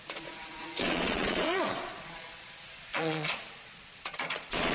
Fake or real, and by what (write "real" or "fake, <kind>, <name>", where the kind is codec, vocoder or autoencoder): fake, vocoder, Vocos